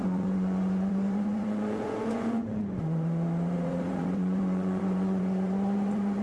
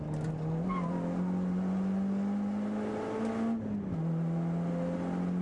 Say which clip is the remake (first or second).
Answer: first